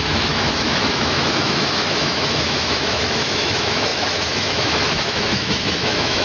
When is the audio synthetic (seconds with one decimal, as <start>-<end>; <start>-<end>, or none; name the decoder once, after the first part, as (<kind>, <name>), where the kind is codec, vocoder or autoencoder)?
0.0-6.2 (autoencoder, DAC-VAE)